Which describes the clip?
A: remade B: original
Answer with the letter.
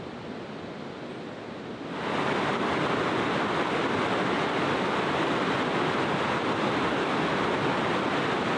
B